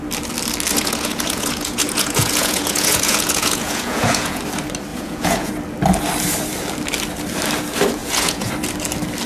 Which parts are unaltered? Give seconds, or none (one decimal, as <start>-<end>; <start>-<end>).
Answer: 0.0-0.7; 4.4-4.9; 5.5-8.0; 8.5-9.3